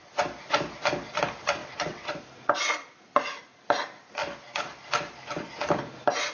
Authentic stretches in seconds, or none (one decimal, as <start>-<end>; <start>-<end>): 0.0-1.6; 2.2-6.3